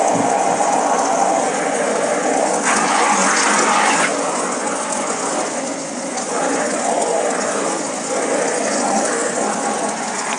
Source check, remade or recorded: remade